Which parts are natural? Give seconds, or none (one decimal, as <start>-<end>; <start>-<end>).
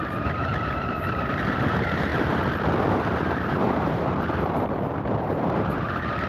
2.1-2.9